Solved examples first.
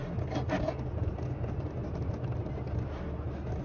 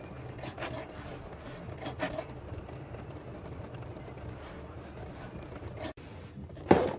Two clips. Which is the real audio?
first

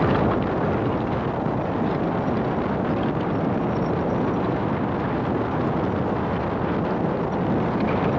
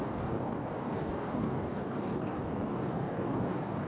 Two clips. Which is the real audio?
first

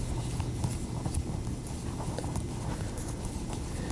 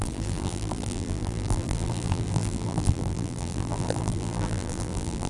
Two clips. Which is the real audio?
first